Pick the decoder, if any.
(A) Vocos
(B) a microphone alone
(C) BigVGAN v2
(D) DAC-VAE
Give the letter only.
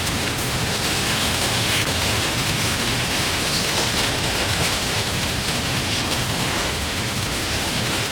D